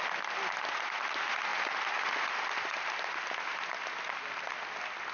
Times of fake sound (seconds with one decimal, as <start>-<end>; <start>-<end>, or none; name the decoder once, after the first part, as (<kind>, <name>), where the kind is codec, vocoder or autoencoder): none